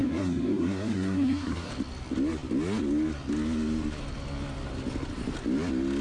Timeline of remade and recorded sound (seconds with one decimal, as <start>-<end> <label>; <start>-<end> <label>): 0.0-1.7 remade; 1.7-6.0 recorded